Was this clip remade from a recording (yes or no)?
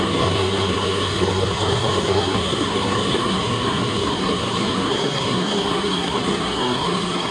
yes